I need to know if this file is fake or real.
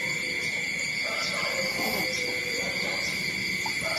real